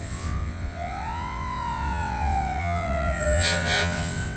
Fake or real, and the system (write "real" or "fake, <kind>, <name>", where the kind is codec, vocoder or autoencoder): fake, vocoder, WaveNeXt